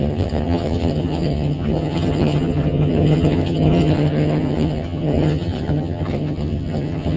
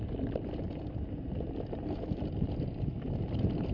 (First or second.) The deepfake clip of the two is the first